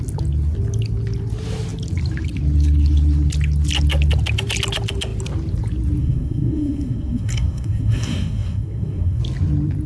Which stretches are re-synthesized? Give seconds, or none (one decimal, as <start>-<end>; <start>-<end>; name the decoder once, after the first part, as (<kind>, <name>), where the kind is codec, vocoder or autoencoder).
6.0-9.2 (codec, SNAC)

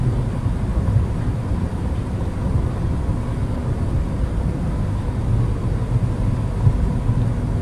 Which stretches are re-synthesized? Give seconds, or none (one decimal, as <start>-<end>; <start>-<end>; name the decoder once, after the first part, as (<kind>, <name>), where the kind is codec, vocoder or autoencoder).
0.7-2.0 (vocoder, BigVGAN v2)

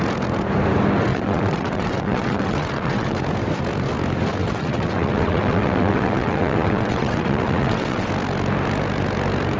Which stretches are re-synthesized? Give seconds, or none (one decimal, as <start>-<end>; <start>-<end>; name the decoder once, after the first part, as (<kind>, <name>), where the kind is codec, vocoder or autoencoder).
1.1-3.2 (vocoder, WaveNeXt); 4.4-8.1

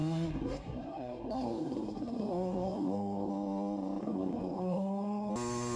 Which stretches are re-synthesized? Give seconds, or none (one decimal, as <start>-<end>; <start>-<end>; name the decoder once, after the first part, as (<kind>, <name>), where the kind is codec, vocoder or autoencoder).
0.0-3.3 (codec, SNAC); 4.0-5.3

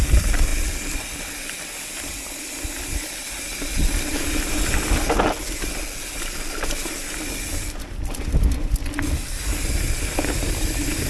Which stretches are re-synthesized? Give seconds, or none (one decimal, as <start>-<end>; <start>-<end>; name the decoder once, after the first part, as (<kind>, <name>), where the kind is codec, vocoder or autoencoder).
none